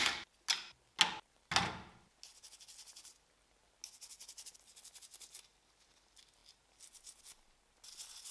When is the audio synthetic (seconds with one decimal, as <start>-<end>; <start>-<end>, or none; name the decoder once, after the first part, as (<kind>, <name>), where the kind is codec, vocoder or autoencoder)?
none